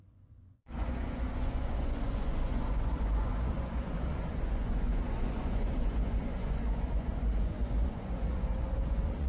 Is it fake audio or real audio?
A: fake